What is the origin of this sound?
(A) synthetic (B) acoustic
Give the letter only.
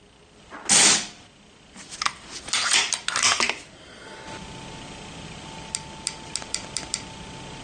B